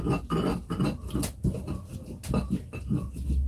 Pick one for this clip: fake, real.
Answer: real